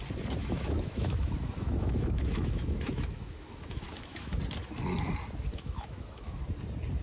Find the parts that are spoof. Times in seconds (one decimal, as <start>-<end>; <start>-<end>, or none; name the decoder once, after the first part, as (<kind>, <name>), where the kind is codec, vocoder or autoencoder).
0.4-4.4 (autoencoder, DAC-VAE); 5.5-6.4

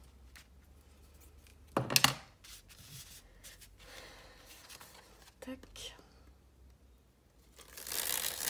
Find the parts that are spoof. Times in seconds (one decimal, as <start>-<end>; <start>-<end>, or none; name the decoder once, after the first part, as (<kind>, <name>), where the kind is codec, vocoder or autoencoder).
none

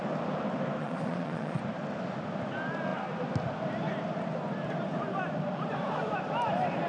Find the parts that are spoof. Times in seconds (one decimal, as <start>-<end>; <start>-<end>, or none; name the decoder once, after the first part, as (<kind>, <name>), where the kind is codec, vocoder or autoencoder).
0.8-1.6 (vocoder, Vocos)